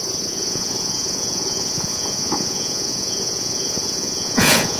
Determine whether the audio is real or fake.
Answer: fake